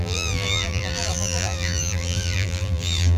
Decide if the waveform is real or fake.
fake